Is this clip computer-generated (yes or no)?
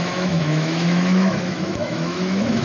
yes